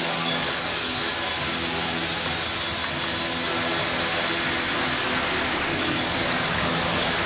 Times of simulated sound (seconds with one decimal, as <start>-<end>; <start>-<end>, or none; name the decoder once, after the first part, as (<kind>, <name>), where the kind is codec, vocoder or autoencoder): 0.0-1.1 (codec, DAC); 5.5-7.3